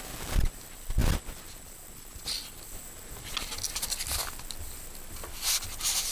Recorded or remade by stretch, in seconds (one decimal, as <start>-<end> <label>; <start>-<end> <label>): 0.0-6.1 recorded